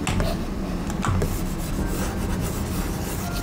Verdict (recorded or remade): recorded